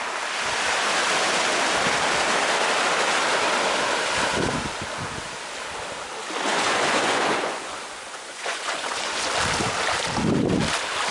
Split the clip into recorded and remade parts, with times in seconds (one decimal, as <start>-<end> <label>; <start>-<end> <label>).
0.0-6.5 recorded; 6.5-9.3 remade; 9.3-11.1 recorded